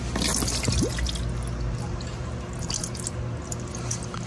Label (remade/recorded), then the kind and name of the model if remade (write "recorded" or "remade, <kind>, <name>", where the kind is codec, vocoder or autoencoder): recorded